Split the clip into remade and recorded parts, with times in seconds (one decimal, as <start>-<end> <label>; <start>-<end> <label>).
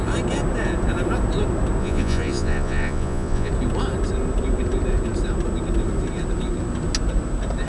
0.0-1.8 recorded; 1.8-3.5 remade; 3.5-7.7 recorded